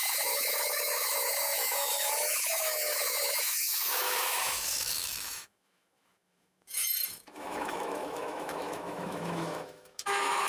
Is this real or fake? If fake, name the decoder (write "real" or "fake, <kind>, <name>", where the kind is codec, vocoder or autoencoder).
fake, autoencoder, DAC-VAE